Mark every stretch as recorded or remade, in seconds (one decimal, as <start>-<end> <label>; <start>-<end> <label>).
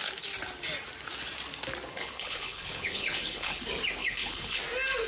0.0-1.9 recorded; 1.9-3.6 remade; 3.6-4.0 recorded; 4.0-4.6 remade; 4.6-5.1 recorded